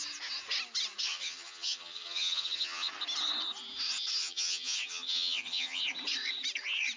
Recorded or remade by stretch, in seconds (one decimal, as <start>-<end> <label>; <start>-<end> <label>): 0.0-1.1 recorded; 1.1-2.9 remade; 2.9-4.2 recorded; 4.2-5.8 remade; 5.8-7.0 recorded